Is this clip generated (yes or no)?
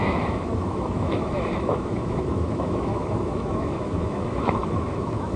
yes